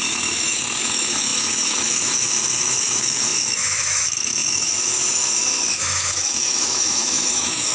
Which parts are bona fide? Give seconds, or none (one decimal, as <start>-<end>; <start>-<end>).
none